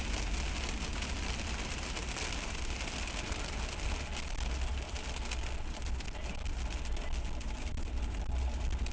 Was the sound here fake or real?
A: real